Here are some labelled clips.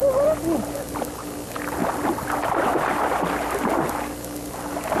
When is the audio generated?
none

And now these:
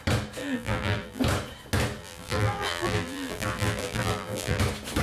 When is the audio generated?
0.4-1.2; 2.0-4.6

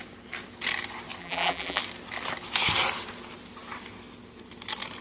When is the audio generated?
1.2-1.8